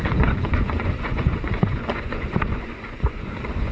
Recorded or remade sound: remade